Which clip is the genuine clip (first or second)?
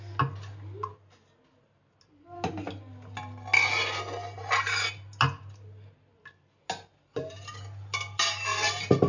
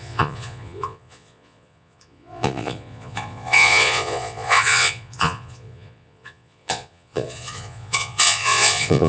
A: first